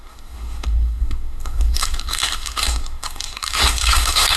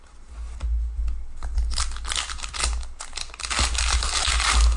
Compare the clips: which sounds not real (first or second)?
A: first